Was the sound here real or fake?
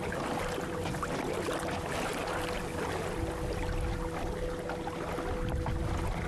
real